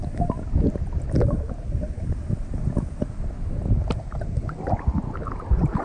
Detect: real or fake real